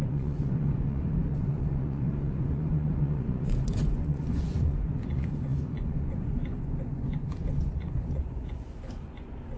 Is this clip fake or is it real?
fake